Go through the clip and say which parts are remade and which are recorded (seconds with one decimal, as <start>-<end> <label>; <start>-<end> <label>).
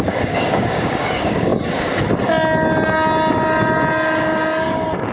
0.0-1.5 remade; 1.5-4.6 recorded; 4.6-5.1 remade